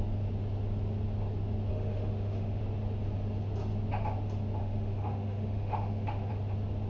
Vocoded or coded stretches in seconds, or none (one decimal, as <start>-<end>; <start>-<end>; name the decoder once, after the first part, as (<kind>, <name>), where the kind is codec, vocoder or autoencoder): 1.7-2.6 (autoencoder, DAC-VAE); 4.6-6.3